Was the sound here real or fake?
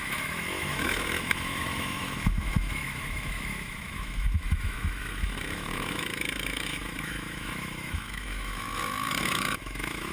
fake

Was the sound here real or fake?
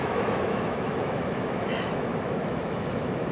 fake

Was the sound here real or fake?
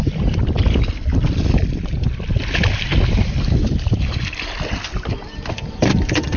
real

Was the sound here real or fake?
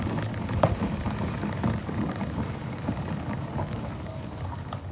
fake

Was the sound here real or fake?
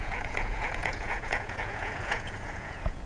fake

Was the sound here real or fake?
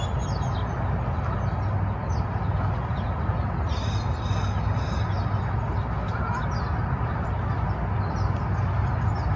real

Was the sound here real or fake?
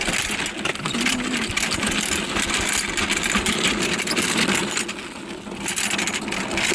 real